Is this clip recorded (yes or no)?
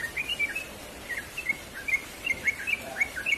no